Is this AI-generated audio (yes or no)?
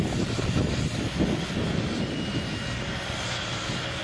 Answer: yes